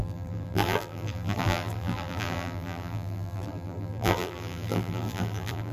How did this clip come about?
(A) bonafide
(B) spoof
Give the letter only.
B